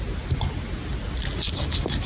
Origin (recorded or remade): recorded